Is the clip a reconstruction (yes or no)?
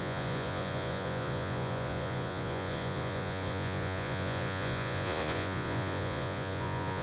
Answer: yes